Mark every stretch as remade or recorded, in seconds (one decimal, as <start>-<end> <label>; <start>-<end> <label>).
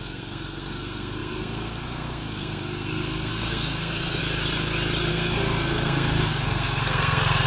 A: 0.0-4.2 remade; 4.2-5.1 recorded; 5.1-7.5 remade